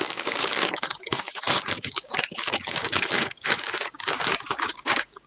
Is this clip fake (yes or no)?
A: yes